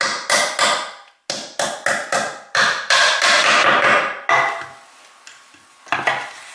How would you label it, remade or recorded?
recorded